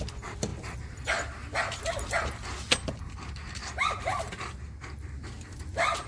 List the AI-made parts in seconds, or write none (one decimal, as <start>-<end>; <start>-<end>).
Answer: none